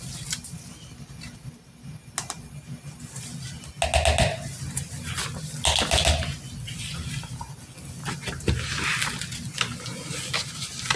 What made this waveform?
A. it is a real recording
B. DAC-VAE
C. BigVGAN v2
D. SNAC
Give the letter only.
A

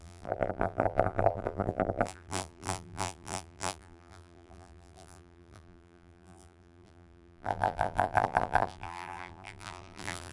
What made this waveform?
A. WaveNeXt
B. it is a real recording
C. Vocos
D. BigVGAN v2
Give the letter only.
D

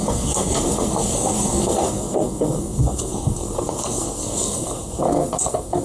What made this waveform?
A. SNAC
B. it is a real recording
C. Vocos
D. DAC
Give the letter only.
A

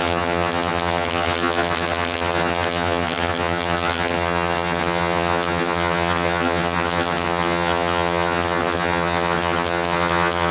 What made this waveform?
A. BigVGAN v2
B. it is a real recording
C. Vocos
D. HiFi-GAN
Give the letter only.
D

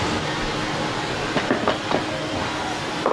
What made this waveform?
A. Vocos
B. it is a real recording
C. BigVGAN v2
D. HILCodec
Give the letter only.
B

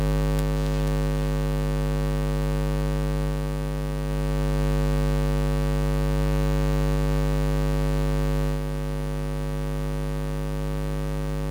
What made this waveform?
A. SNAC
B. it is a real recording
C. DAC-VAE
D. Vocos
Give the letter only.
B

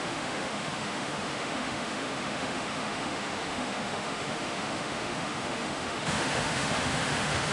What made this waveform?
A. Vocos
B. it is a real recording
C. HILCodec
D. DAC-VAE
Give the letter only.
D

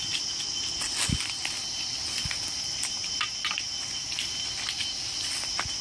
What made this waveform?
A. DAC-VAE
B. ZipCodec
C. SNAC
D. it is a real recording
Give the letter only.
D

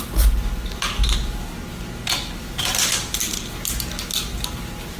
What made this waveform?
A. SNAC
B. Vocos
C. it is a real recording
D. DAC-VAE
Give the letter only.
C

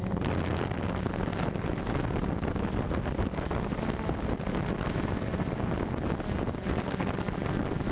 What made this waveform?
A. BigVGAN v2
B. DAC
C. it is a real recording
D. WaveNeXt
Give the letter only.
C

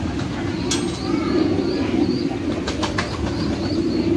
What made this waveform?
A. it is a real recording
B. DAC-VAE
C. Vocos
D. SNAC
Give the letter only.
A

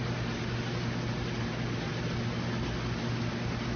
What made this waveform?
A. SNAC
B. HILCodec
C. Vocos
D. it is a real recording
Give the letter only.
D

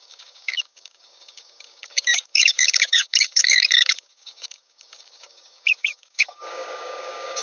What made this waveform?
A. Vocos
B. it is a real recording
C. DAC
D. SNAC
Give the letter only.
C